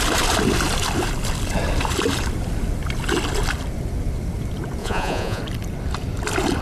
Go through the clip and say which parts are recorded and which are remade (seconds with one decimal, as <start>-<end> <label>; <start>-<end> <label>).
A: 0.0-4.8 recorded; 4.8-5.4 remade; 5.4-6.6 recorded